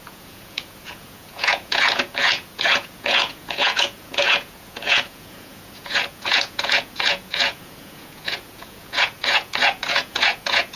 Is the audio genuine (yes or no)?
no